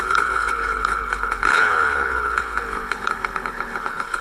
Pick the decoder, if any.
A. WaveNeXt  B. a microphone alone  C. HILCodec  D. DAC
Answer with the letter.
C